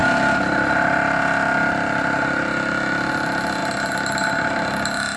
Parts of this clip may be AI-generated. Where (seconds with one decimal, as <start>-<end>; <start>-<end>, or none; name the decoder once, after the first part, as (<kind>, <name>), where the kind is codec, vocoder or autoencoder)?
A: none